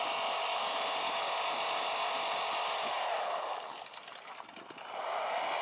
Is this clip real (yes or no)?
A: yes